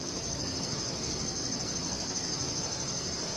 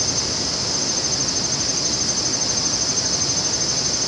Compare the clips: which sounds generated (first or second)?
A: first